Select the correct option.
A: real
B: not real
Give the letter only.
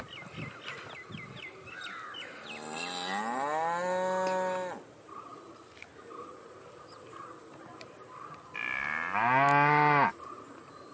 A